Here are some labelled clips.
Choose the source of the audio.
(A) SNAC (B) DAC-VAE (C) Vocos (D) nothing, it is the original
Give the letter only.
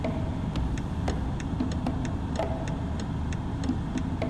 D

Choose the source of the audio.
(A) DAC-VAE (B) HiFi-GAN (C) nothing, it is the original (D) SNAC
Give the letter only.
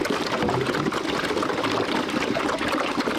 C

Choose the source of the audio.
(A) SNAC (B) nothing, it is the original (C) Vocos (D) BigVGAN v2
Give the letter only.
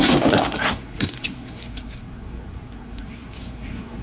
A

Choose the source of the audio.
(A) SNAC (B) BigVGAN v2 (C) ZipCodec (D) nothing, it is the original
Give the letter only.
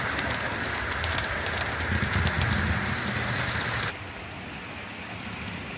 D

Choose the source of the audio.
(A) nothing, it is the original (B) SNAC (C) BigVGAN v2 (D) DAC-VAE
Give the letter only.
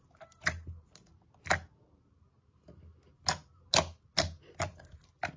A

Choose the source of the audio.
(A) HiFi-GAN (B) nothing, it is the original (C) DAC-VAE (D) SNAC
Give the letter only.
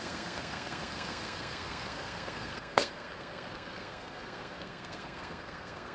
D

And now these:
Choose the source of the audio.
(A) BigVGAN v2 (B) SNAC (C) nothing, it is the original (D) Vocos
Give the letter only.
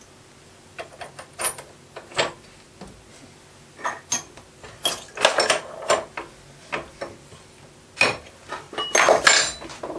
C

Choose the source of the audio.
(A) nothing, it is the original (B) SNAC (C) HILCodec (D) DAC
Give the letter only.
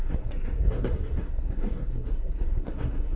B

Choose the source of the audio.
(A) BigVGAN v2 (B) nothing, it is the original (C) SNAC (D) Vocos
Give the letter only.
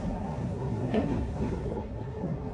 C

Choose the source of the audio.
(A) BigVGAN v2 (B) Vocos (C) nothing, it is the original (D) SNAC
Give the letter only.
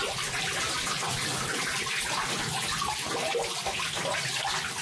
C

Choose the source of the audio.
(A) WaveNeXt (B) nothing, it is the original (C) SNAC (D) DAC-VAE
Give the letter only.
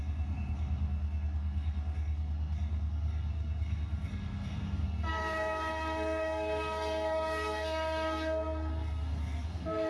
C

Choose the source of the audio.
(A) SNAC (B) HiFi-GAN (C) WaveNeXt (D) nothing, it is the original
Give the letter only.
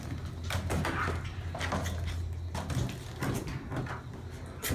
D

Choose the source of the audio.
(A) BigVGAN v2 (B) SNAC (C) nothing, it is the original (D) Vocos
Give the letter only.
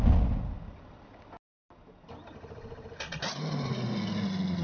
C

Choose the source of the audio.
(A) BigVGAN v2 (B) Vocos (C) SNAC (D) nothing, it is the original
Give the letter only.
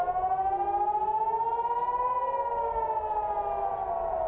D